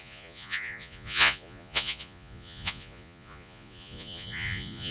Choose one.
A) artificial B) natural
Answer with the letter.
A